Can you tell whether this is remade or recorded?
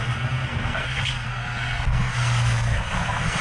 remade